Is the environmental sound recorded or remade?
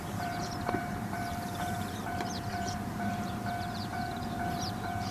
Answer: remade